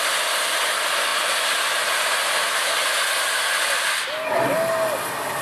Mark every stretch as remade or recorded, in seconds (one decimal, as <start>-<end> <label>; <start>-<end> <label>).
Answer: 0.0-5.4 recorded